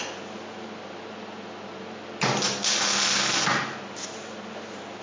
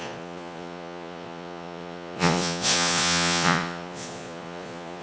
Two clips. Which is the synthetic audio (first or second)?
second